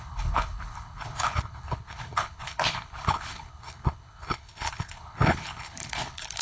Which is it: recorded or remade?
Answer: remade